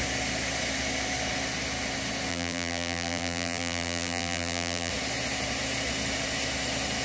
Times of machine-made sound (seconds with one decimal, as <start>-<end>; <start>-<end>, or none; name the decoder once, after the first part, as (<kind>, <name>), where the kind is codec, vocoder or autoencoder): 2.3-4.9 (vocoder, BigVGAN v2)